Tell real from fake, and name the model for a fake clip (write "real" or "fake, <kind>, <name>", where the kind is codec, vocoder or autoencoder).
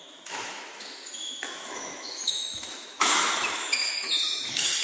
fake, autoencoder, DAC-VAE